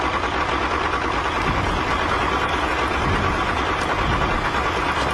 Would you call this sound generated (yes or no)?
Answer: no